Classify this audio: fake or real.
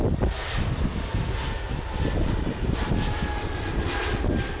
real